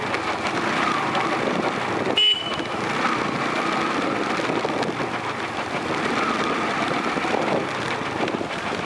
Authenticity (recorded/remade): remade